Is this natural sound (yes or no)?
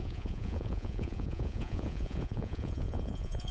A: no